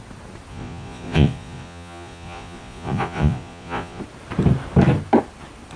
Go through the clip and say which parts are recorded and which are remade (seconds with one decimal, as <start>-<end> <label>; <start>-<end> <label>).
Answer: 0.0-0.5 recorded; 0.5-4.0 remade; 4.0-5.8 recorded